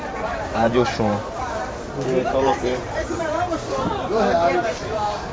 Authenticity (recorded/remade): remade